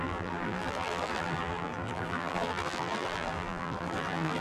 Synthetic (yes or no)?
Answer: yes